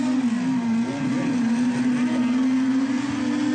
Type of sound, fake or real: real